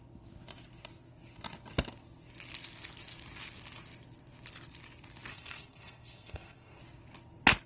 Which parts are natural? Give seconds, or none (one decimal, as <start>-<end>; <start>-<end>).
0.0-5.3; 6.8-7.7